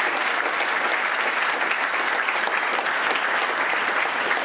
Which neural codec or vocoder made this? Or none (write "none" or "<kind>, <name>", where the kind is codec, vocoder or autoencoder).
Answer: none